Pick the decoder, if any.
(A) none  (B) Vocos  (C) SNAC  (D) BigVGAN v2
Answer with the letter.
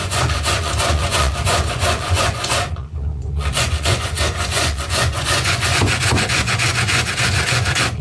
B